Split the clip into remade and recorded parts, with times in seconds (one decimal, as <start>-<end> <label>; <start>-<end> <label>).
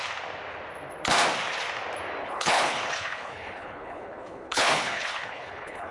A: 0.0-2.2 recorded; 2.2-5.9 remade